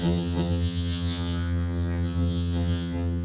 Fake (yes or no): yes